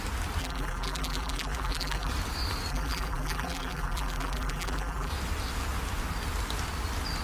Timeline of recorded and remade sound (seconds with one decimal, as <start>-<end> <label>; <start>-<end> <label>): 0.0-0.4 recorded; 0.4-2.1 remade; 2.1-2.7 recorded; 2.7-5.1 remade; 5.1-7.2 recorded